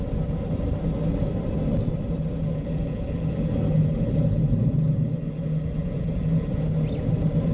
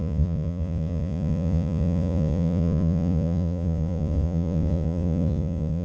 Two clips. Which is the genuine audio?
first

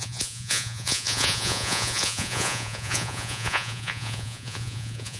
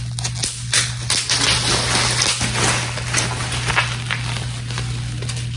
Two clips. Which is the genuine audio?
second